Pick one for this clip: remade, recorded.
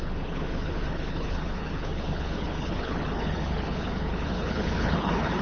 remade